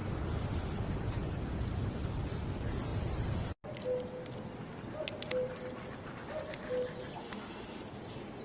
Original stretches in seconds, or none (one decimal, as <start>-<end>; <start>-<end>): 0.0-7.2; 7.8-8.4

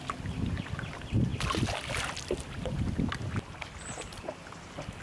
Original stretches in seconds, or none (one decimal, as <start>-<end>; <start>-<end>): 0.0-5.0

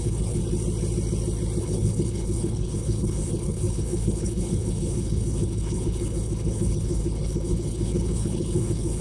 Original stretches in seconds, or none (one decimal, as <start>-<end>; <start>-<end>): 0.4-1.6

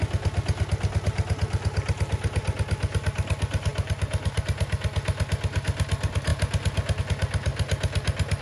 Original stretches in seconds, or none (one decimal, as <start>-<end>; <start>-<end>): 0.0-3.7; 4.4-8.4

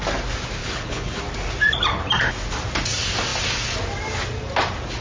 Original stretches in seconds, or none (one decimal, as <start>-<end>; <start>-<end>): 0.0-0.6; 1.2-5.0

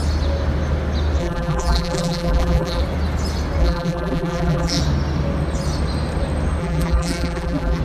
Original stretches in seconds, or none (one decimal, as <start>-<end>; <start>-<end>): 0.0-1.2; 2.8-3.6; 4.8-6.6

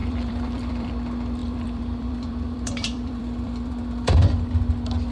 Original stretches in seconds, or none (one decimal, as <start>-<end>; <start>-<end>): 0.9-1.4; 4.5-5.1

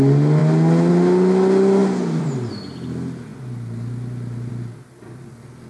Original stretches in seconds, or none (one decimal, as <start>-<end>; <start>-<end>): 0.0-1.8; 2.5-5.7